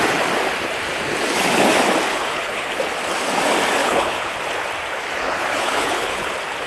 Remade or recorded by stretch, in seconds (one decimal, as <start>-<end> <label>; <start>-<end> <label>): 0.0-2.1 recorded; 2.1-2.8 remade; 2.8-3.8 recorded; 3.8-4.4 remade; 4.4-5.2 recorded; 5.2-6.3 remade; 6.3-6.7 recorded